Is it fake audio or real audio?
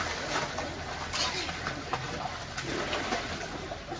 real